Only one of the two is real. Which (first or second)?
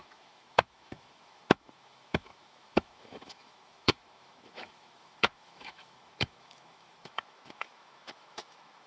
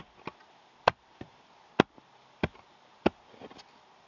second